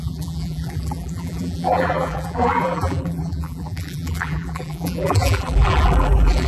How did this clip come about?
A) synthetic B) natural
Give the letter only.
A